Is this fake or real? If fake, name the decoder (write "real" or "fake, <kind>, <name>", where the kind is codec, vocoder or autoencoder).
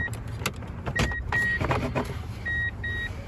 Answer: real